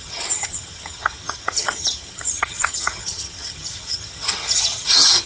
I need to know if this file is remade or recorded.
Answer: remade